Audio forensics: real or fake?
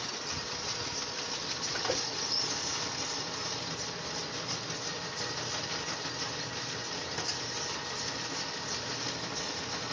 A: real